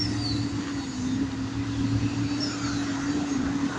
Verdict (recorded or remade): recorded